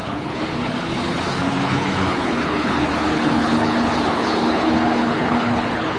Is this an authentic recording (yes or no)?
no